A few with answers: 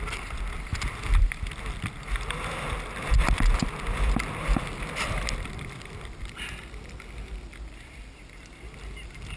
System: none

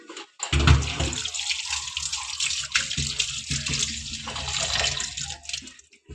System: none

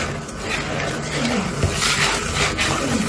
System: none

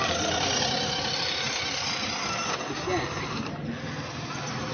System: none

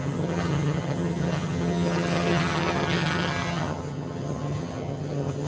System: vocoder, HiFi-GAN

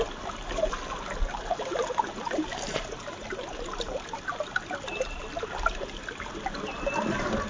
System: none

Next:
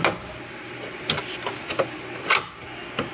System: none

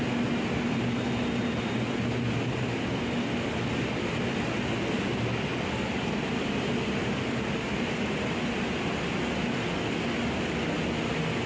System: none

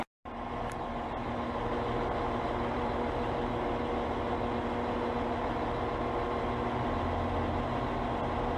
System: none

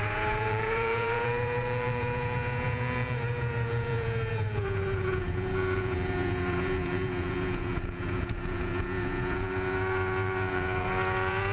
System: vocoder, Vocos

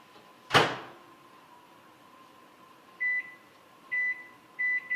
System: none